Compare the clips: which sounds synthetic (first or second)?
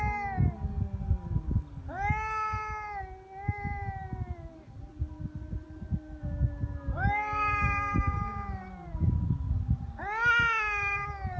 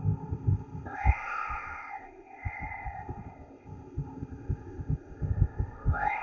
second